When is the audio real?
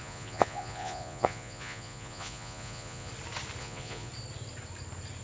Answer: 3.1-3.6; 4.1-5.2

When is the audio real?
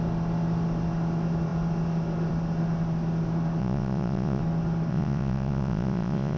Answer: 0.0-3.6; 4.4-4.9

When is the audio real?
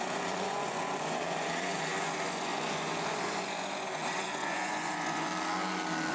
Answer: 5.3-6.1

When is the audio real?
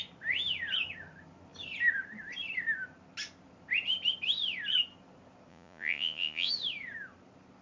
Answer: 0.0-5.5; 6.5-7.6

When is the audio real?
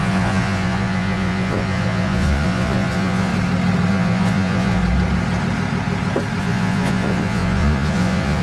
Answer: 3.3-3.9; 4.8-6.4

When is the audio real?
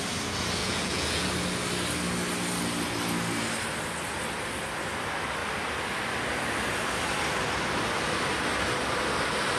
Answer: 0.0-0.6; 1.3-9.6